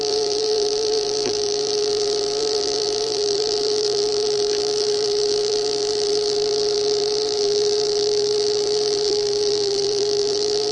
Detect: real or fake fake